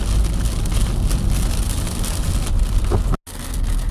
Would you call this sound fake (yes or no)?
no